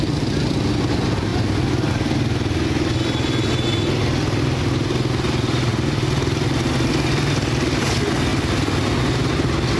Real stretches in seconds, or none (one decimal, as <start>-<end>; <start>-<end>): 0.0-9.8